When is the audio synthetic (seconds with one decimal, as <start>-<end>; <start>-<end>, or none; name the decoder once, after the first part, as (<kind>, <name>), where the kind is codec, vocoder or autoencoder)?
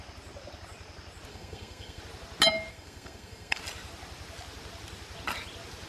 1.3-2.0 (codec, SNAC); 2.7-3.6